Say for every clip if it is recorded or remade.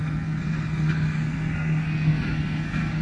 remade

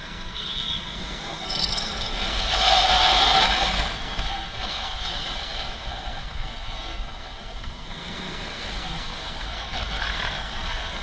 remade